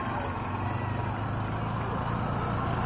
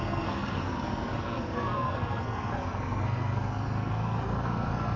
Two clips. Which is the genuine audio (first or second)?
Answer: first